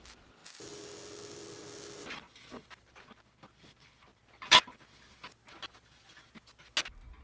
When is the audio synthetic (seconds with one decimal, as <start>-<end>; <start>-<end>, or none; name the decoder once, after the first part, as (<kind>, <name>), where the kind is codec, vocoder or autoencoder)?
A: none